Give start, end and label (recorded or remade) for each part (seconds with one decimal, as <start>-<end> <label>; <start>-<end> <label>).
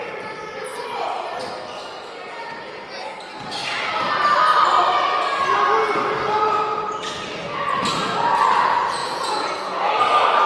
0.0-9.0 recorded; 9.0-9.9 remade; 9.9-10.5 recorded